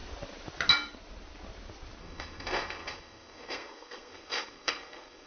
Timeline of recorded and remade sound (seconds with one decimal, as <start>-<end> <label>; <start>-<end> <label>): 0.0-2.0 recorded; 2.0-5.3 remade